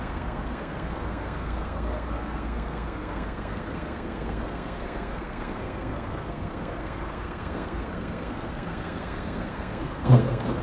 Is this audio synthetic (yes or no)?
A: yes